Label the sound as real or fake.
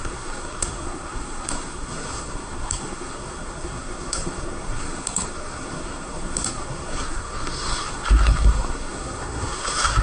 fake